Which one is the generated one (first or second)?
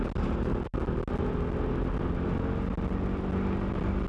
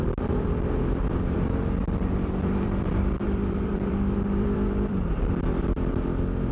second